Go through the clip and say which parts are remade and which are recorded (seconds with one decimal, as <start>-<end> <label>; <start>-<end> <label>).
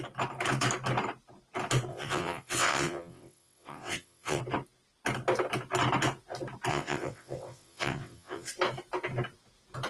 0.0-1.9 recorded; 1.9-4.4 remade; 4.4-6.7 recorded; 6.7-8.5 remade; 8.5-9.9 recorded